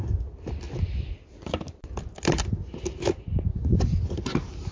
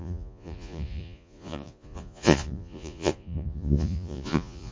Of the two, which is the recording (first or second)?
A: first